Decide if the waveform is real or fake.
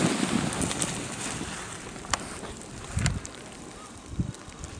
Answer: real